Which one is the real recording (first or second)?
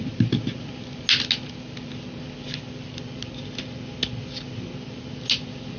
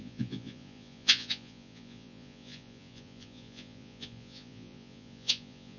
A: first